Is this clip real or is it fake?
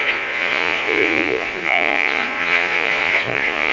fake